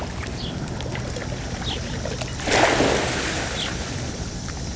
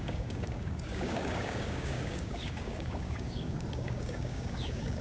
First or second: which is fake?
second